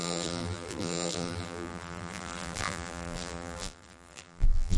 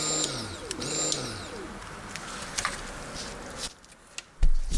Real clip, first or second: second